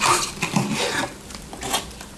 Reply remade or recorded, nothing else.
recorded